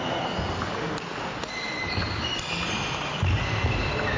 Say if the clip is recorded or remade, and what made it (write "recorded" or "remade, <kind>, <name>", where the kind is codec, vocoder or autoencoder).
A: recorded